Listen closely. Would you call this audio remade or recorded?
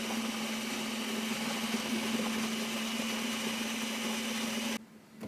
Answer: recorded